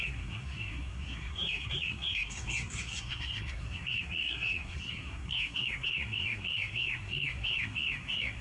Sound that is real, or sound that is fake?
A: fake